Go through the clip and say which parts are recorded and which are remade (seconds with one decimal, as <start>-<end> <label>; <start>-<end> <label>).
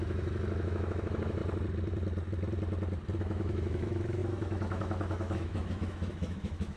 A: 0.0-1.4 remade; 1.4-3.2 recorded; 3.2-6.8 remade